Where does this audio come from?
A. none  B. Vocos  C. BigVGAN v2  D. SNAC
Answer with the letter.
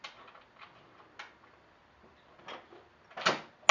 A